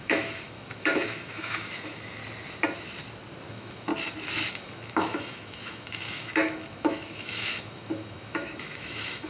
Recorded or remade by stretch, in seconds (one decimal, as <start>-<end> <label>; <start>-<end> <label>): 0.0-2.2 remade; 2.2-3.5 recorded; 3.5-3.9 remade; 3.9-4.5 recorded; 4.5-9.3 remade